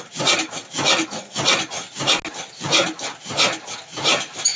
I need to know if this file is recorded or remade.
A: recorded